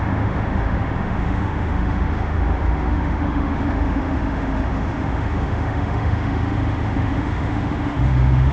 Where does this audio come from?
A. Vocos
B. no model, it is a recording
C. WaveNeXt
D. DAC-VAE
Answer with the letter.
D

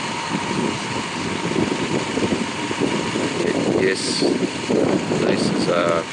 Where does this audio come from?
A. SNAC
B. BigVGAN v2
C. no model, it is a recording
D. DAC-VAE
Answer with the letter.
C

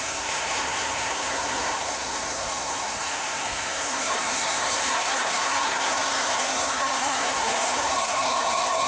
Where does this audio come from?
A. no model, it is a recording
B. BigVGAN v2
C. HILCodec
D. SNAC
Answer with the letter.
D